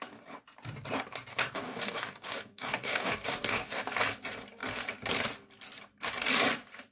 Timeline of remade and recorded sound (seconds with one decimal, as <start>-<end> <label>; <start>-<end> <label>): 0.0-1.3 recorded; 1.3-3.8 remade; 3.8-6.9 recorded